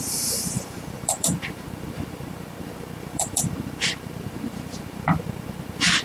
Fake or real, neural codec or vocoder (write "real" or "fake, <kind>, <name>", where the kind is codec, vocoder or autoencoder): fake, vocoder, BigVGAN v2